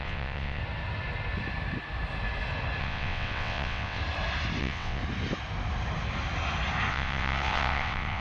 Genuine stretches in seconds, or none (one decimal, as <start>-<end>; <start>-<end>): 0.6-2.8; 4.0-4.6; 5.0-6.9